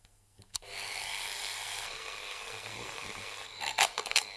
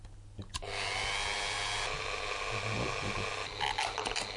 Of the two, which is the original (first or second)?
second